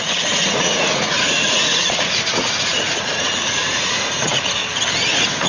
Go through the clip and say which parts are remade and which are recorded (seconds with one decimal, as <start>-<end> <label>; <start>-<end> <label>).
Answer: 0.0-4.6 remade; 4.6-5.1 recorded; 5.1-5.5 remade